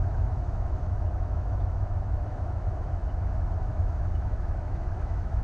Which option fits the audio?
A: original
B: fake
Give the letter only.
B